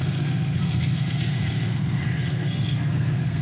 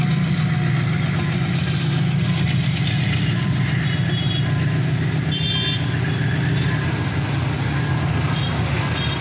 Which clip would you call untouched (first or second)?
second